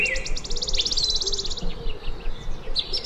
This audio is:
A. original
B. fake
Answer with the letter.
A